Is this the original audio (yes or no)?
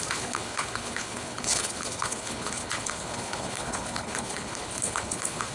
no